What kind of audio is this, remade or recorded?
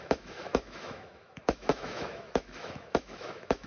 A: remade